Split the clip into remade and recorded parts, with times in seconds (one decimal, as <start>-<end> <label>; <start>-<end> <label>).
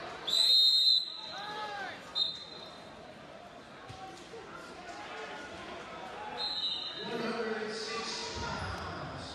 0.0-9.3 recorded